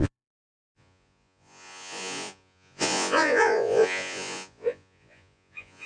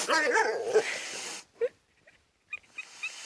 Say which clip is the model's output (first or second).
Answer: first